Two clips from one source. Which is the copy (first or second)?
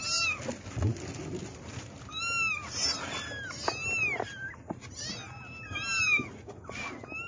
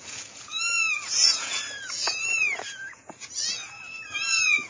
second